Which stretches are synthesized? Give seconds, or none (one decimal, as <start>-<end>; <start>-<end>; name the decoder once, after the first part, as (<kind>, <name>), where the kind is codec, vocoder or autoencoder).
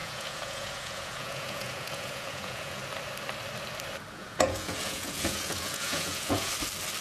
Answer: 0.0-2.8 (vocoder, Vocos); 4.2-6.5